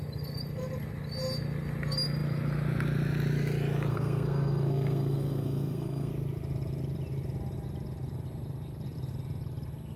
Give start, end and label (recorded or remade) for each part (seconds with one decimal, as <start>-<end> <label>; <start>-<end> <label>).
0.0-3.9 recorded; 3.9-6.1 remade; 6.1-10.0 recorded